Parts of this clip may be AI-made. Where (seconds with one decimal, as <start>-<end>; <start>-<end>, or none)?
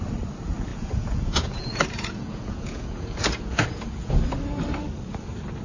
0.7-4.1